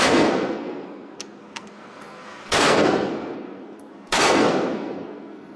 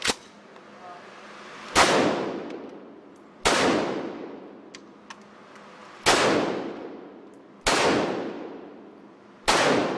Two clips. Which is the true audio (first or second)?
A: second